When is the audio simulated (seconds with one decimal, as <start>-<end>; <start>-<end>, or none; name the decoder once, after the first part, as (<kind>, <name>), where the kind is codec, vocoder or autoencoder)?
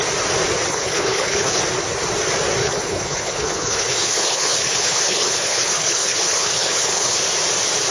0.7-1.6 (codec, HILCodec); 2.6-7.2